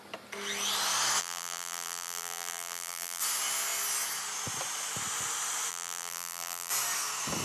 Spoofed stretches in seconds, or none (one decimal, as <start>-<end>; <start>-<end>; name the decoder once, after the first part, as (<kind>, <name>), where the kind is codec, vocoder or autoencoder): 1.2-3.2 (vocoder, BigVGAN v2); 5.7-6.7